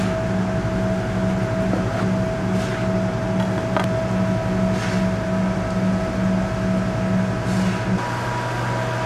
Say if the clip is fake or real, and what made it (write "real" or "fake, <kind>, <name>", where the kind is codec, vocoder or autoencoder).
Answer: real